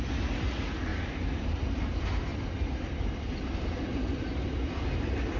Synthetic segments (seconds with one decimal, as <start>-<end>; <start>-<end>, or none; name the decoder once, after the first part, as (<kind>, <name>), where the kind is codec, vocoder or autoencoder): 0.9-1.7 (vocoder, BigVGAN v2); 2.3-4.1